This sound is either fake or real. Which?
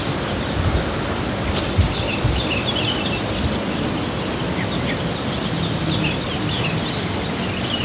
real